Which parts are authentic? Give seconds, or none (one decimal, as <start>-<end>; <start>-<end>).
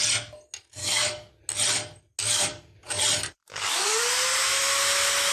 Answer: 0.0-0.8; 1.4-2.2; 3.0-3.4; 4.0-5.3